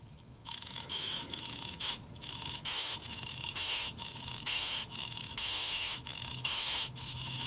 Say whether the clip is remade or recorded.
remade